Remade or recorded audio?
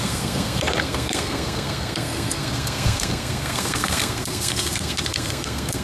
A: remade